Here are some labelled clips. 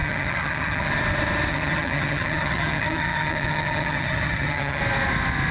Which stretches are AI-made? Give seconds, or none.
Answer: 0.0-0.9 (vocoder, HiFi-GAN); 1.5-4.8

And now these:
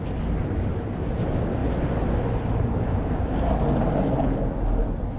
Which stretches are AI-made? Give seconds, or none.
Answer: none

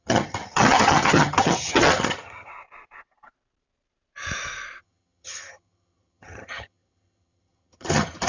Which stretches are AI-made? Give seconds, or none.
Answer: 0.0-2.5 (vocoder, HiFi-GAN); 4.8-8.3

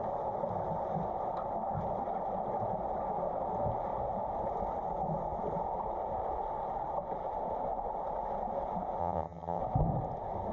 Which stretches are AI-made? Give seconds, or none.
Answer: 9.0-9.6 (vocoder, HiFi-GAN)

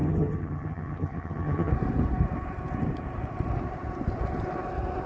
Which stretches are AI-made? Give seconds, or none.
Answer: 0.0-1.7 (vocoder, HiFi-GAN)

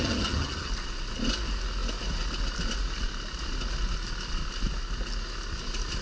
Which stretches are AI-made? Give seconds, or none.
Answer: 0.0-0.7 (vocoder, HiFi-GAN)

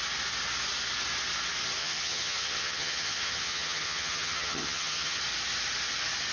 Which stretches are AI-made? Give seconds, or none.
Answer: 1.8-5.2 (vocoder, HiFi-GAN)